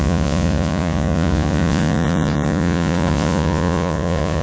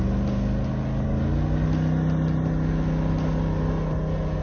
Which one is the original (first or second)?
second